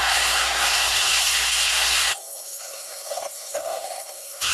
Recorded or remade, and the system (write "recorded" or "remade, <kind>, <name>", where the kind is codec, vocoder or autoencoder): remade, codec, SNAC